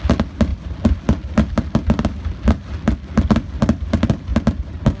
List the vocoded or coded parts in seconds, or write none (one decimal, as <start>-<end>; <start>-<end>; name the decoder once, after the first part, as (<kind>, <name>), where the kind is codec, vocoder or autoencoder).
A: none